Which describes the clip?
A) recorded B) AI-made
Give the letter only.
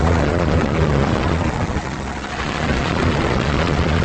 B